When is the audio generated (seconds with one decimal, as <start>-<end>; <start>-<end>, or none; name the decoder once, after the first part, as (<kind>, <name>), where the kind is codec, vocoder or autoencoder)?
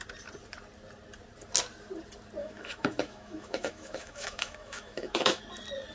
2.4-5.4 (autoencoder, DAC-VAE)